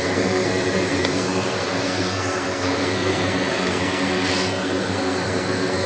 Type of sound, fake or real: fake